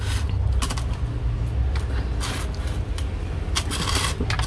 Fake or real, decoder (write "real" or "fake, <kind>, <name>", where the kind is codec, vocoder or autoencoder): real